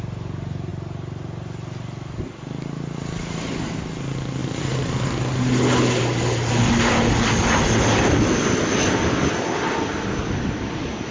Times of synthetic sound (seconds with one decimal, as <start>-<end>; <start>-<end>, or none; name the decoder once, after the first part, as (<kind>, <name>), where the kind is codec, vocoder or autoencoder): none